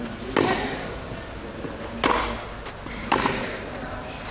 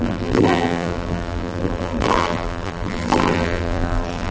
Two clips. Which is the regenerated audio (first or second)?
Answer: second